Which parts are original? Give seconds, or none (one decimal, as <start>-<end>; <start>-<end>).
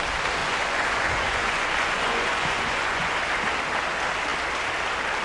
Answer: 0.0-0.4; 3.1-5.2